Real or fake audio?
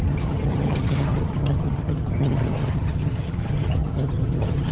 fake